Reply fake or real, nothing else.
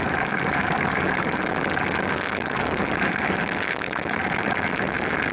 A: fake